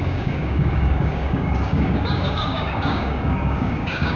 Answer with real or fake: fake